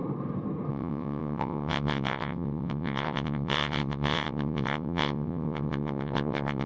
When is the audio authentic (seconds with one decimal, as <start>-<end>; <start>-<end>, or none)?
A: 0.0-0.7